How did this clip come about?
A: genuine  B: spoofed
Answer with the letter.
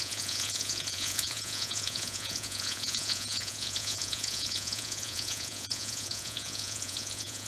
B